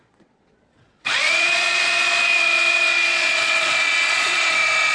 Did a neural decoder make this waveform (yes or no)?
yes